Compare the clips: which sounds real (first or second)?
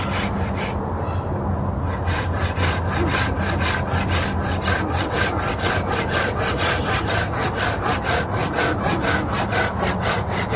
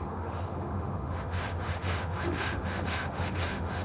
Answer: first